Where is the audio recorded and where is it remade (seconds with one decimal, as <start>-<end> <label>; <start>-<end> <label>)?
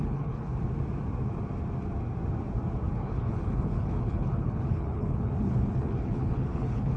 0.0-0.5 remade; 0.5-2.9 recorded; 2.9-7.0 remade